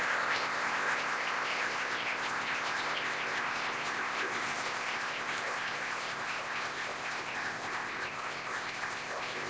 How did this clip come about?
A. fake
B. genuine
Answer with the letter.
A